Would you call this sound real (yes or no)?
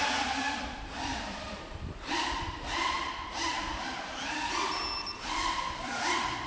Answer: no